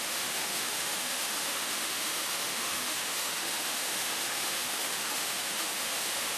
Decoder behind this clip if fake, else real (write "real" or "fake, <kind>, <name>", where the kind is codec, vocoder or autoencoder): fake, autoencoder, DAC-VAE